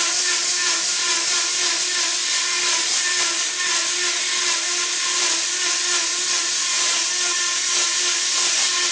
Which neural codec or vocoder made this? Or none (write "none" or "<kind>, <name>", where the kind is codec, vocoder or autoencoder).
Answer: none